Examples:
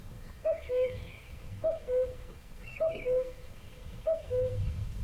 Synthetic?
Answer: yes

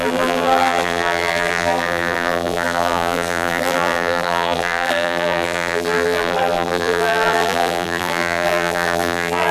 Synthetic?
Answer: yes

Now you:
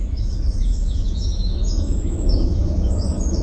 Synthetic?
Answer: yes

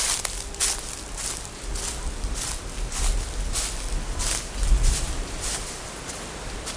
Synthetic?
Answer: no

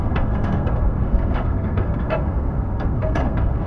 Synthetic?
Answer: yes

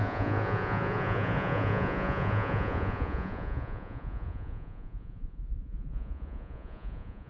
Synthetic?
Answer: yes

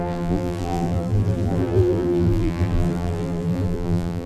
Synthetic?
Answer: yes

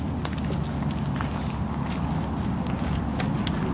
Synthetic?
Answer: no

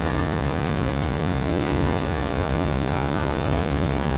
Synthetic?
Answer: yes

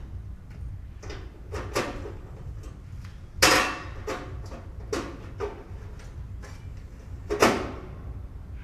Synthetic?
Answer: no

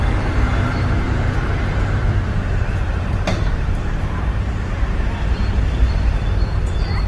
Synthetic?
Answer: yes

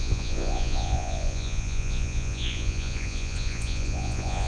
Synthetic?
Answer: yes